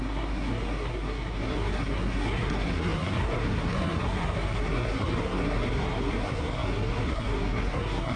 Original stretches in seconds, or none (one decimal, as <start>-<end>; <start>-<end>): none

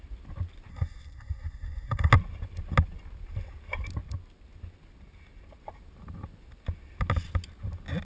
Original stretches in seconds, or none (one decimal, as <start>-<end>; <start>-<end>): 0.0-0.7; 2.1-8.0